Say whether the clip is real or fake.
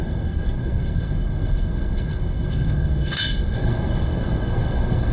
fake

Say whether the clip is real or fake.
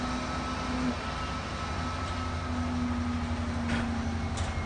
real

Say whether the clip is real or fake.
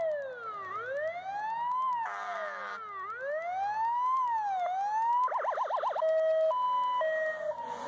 real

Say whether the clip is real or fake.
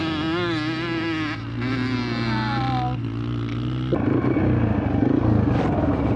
real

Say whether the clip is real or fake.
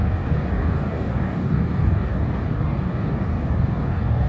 fake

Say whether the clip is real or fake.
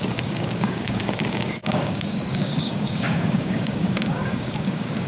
fake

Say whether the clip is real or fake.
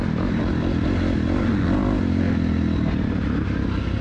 real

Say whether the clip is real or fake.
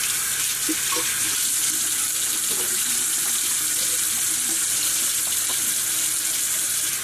real